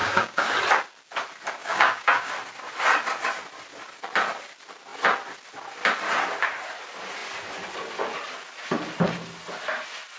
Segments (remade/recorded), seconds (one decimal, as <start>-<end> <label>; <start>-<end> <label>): 0.0-0.5 remade; 0.5-1.6 recorded; 1.6-2.3 remade; 2.3-10.2 recorded